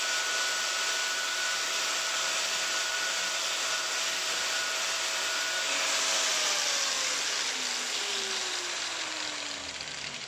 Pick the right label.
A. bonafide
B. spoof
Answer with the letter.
B